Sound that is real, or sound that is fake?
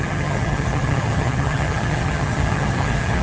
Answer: fake